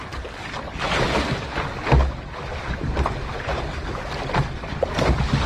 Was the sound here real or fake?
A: real